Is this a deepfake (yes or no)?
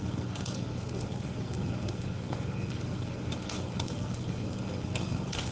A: yes